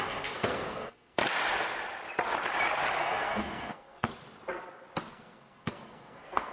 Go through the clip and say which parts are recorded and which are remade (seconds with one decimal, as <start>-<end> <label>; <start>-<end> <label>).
0.0-1.2 remade; 1.2-3.0 recorded; 3.0-4.1 remade; 4.1-5.1 recorded; 5.1-6.5 remade

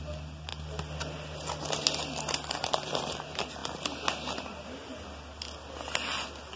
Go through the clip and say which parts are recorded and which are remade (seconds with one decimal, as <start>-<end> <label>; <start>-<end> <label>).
0.0-6.6 recorded

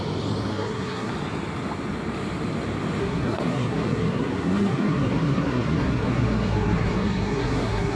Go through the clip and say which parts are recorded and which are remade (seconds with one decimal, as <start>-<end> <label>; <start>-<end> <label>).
0.0-0.5 recorded; 0.5-1.1 remade; 1.1-3.0 recorded; 3.0-8.0 remade

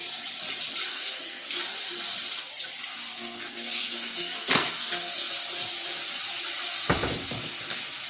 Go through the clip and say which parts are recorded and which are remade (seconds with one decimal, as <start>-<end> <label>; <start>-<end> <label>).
0.0-0.9 recorded; 0.9-1.6 remade; 1.6-2.9 recorded; 2.9-5.3 remade; 5.3-8.1 recorded

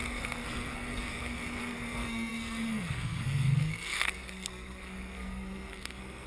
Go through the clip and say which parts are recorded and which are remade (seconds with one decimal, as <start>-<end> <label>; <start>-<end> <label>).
0.0-6.3 remade

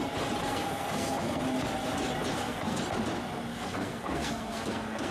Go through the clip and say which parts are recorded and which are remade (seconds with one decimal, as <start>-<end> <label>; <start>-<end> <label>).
0.0-0.4 recorded; 0.4-1.4 remade; 1.4-2.3 recorded; 2.3-2.8 remade; 2.8-3.5 recorded; 3.5-5.1 remade